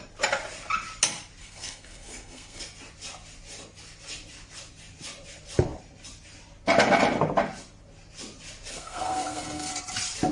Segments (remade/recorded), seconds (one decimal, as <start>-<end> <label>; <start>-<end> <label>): 0.0-1.4 recorded; 1.4-2.6 remade; 2.6-8.7 recorded; 8.7-9.7 remade; 9.7-10.3 recorded